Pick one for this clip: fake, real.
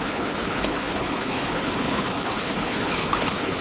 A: fake